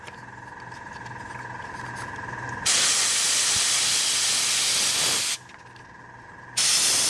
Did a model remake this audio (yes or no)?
no